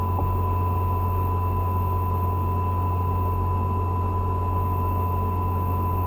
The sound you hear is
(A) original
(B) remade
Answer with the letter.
A